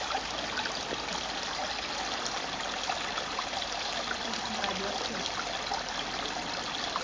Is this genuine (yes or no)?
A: yes